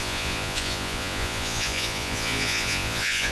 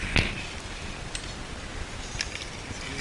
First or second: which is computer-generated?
first